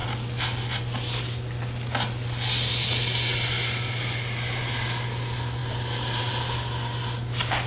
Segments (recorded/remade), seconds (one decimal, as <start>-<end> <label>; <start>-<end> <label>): 0.0-7.7 recorded